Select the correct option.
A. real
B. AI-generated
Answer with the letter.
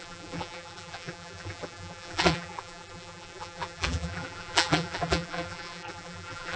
B